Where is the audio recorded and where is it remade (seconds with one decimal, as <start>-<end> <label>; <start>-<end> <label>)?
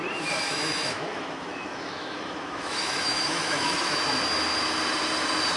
0.0-0.5 recorded; 0.5-3.9 remade; 3.9-5.6 recorded